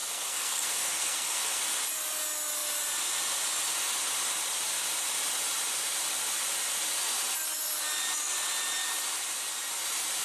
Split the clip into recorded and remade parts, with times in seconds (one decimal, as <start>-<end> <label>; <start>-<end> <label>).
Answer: 0.0-1.6 remade; 1.6-10.2 recorded